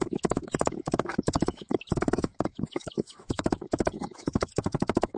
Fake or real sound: fake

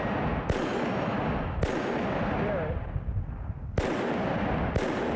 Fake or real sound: real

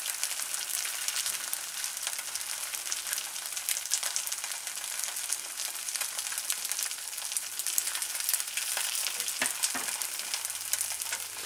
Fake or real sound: real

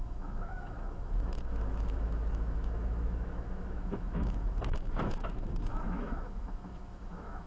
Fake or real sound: fake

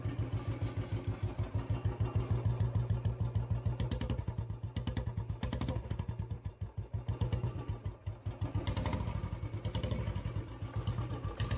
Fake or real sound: real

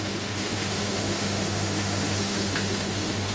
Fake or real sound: fake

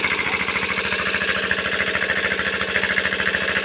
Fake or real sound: real